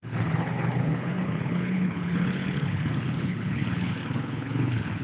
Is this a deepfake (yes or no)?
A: yes